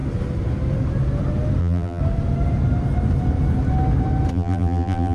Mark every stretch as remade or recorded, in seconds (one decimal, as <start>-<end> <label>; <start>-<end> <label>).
0.0-1.6 recorded; 1.6-2.0 remade; 2.0-4.3 recorded; 4.3-5.1 remade